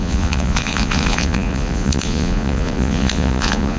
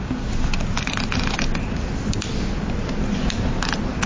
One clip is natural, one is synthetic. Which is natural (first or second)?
second